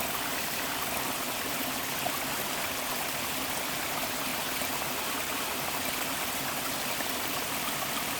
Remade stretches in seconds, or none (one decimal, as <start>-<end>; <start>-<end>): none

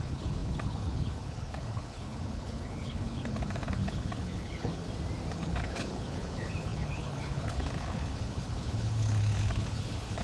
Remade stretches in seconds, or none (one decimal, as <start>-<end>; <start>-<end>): 0.0-4.8; 5.3-10.2

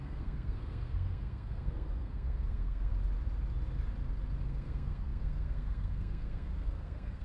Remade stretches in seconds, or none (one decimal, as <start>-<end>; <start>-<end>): 0.0-2.9; 4.4-7.2

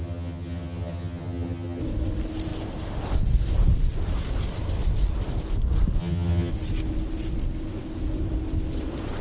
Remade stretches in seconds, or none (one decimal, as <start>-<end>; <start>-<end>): 0.0-1.8; 6.0-6.5

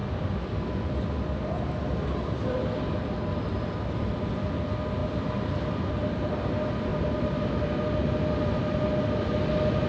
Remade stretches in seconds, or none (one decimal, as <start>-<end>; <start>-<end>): none

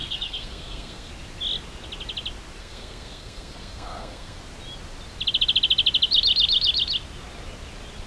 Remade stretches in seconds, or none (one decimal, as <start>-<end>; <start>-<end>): 0.0-1.1; 2.6-4.4